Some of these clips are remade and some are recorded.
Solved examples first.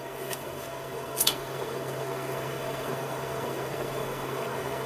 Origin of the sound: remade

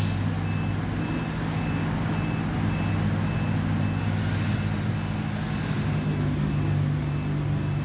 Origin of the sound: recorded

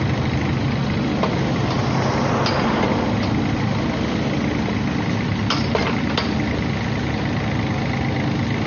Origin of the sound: recorded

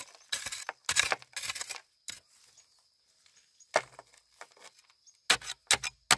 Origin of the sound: recorded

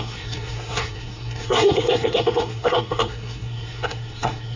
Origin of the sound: remade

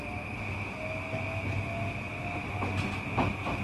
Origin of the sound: recorded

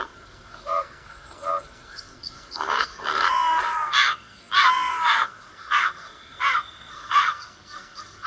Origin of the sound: remade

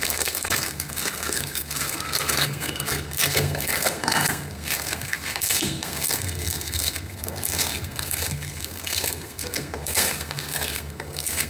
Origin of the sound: remade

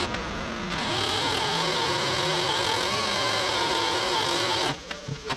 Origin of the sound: recorded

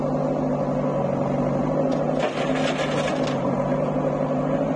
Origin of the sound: recorded